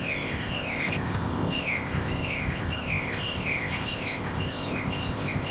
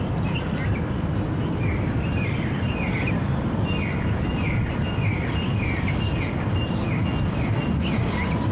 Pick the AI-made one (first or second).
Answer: first